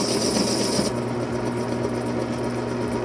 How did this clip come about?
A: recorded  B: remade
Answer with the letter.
A